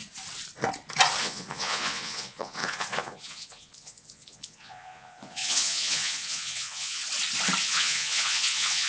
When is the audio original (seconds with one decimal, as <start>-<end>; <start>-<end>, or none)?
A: 0.0-1.2; 7.0-7.6